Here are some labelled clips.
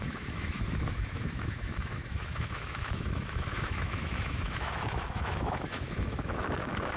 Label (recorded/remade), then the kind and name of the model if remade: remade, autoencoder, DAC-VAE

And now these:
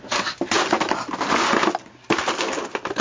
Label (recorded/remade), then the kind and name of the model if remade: recorded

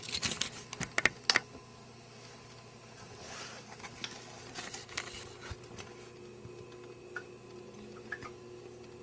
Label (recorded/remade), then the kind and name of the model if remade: recorded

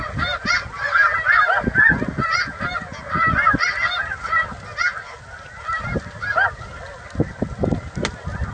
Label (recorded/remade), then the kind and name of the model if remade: recorded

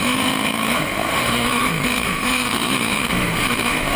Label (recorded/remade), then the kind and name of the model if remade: remade, autoencoder, DAC-VAE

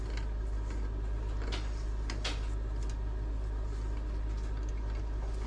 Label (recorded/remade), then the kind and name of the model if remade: recorded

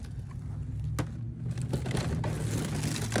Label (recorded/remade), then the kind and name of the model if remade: recorded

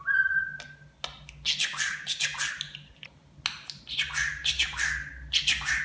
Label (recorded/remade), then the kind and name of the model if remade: recorded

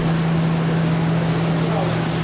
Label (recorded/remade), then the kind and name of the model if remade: recorded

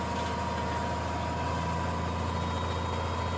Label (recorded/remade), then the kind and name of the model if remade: recorded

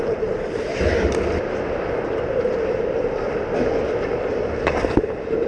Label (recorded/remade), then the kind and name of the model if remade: recorded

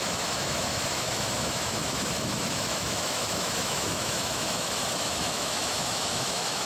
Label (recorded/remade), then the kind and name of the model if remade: remade, autoencoder, DAC-VAE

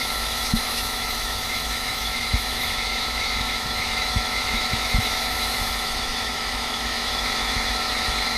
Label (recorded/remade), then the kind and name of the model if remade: remade, autoencoder, DAC-VAE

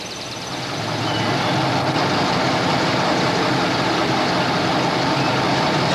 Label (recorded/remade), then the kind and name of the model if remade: recorded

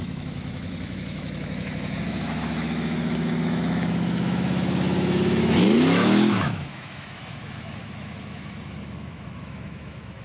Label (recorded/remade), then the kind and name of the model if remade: remade, autoencoder, DAC-VAE